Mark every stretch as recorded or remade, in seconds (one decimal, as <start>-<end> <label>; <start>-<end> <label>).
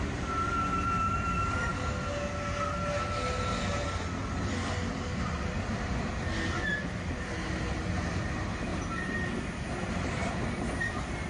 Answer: 0.0-11.3 recorded